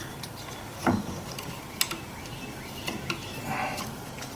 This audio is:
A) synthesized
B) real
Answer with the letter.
B